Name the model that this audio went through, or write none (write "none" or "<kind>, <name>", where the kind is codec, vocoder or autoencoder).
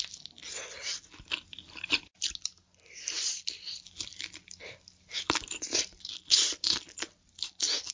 none